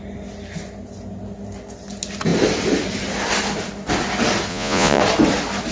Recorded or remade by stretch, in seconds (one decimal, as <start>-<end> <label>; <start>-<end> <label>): 0.0-4.5 recorded; 4.5-5.0 remade; 5.0-5.7 recorded